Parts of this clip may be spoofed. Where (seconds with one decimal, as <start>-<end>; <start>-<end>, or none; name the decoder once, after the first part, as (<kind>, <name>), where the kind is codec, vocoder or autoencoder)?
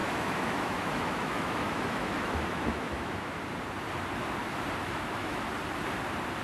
0.0-3.4 (autoencoder, DAC-VAE); 4.8-5.4